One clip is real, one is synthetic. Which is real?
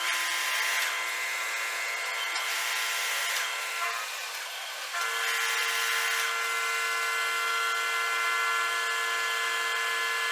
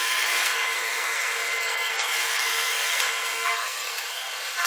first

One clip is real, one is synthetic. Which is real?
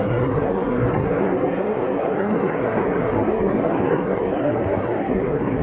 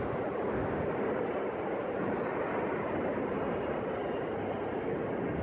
second